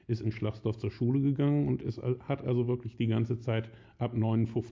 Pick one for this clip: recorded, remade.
recorded